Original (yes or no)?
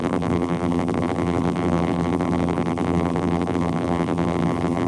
no